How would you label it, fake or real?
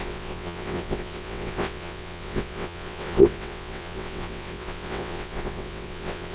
fake